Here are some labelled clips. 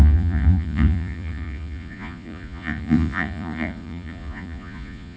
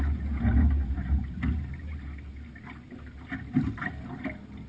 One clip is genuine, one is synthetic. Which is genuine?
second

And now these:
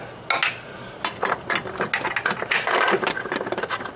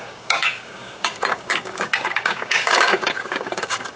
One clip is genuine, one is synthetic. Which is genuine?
first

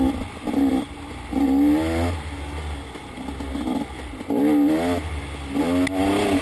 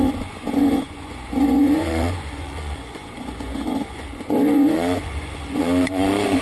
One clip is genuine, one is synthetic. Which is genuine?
first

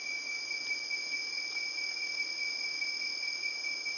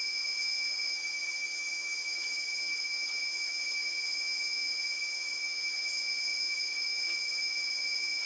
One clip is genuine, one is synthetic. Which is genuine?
first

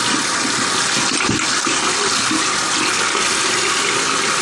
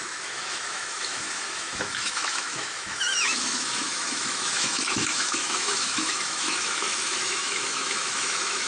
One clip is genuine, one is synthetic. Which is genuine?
first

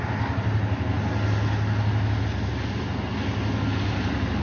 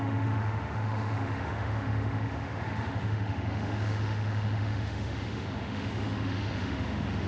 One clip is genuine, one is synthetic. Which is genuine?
first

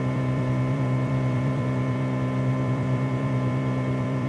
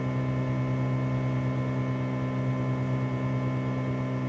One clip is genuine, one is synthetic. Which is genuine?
second